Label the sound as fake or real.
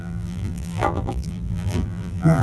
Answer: fake